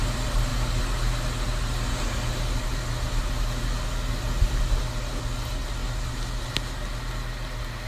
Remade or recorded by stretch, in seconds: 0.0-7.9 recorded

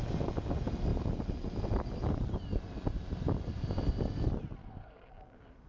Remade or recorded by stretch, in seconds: 0.0-4.6 recorded; 4.6-5.7 remade

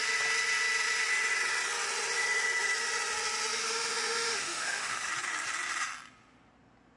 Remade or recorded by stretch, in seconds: 0.0-3.6 recorded; 3.6-5.1 remade; 5.1-7.0 recorded

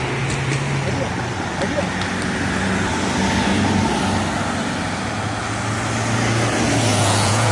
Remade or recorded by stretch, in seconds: 0.0-6.9 recorded; 6.9-7.5 remade